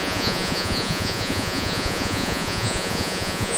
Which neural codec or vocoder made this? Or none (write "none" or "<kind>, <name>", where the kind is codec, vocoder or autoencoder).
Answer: vocoder, Vocos